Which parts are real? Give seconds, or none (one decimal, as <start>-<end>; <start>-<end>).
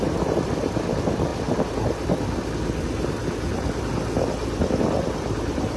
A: 1.3-4.8